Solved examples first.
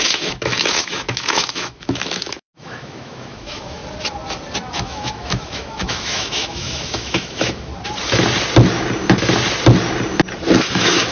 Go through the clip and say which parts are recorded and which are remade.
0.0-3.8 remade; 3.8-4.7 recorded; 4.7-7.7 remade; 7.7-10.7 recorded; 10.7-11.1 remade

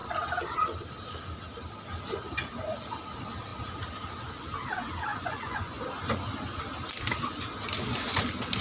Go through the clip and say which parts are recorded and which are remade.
0.0-5.1 recorded; 5.1-5.8 remade; 5.8-8.6 recorded

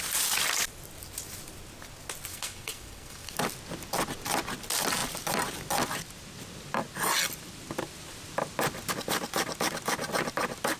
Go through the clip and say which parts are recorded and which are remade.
0.0-2.3 recorded; 2.3-3.4 remade; 3.4-10.8 recorded

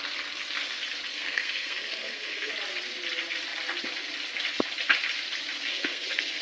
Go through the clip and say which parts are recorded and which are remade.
0.0-1.1 recorded; 1.1-2.5 remade; 2.5-5.7 recorded; 5.7-6.4 remade